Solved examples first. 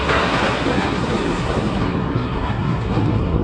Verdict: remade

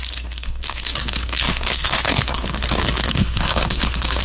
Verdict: remade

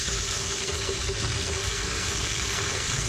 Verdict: remade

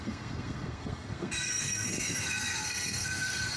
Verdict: remade